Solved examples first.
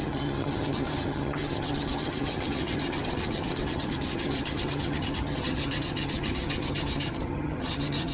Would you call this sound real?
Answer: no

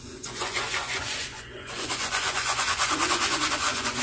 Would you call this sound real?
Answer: no